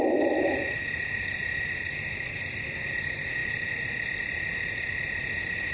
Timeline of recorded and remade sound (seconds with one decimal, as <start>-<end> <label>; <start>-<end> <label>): 0.0-5.7 recorded